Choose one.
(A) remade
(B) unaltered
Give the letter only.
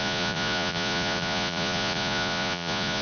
A